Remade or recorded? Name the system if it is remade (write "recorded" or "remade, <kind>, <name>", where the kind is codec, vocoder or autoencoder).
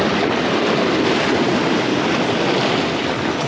recorded